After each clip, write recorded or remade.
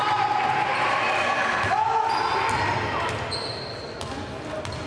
recorded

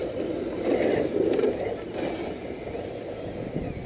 recorded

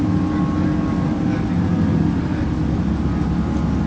recorded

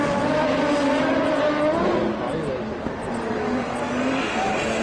recorded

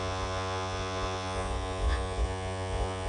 remade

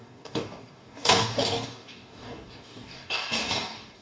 remade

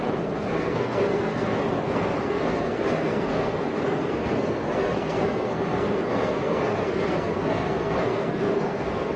remade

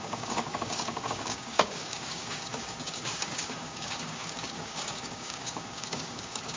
remade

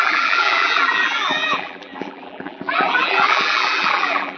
remade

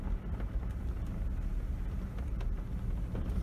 recorded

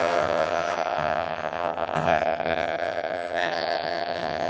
remade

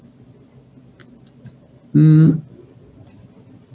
recorded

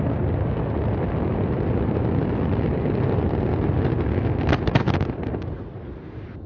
recorded